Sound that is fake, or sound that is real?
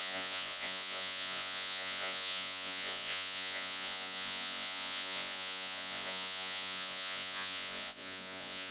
fake